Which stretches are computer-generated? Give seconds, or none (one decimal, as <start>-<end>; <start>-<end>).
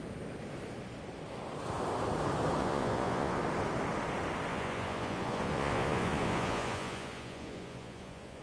2.6-3.4; 4.5-8.4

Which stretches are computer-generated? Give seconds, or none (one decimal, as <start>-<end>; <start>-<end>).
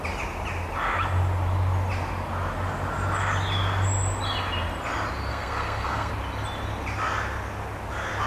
5.3-6.1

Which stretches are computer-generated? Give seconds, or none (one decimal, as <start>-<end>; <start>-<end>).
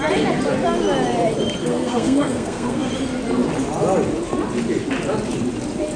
1.6-2.9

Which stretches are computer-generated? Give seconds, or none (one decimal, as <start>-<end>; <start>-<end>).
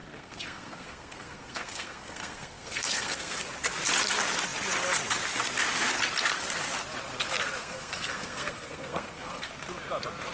0.0-3.4; 7.6-9.5